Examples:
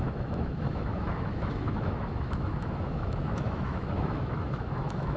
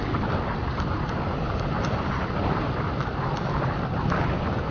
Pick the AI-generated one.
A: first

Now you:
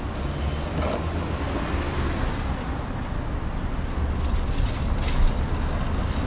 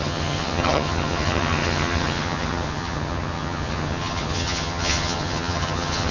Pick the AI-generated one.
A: second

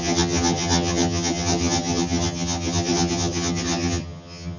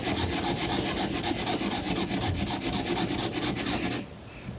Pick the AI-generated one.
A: first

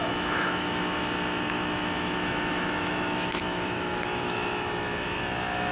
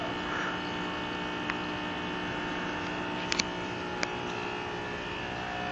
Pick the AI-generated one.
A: first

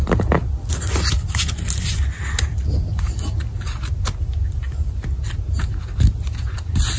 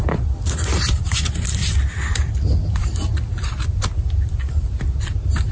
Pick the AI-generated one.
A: second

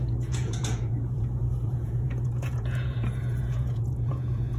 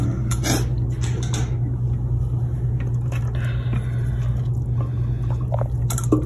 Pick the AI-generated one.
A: first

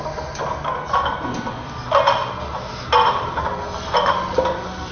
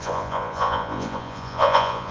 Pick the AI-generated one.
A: second